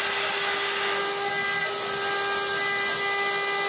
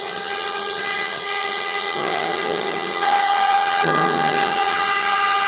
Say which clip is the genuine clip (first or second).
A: first